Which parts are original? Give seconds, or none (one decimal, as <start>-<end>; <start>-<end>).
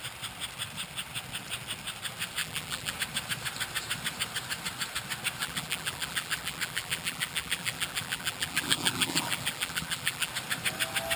0.0-2.4; 2.9-5.4; 10.3-11.2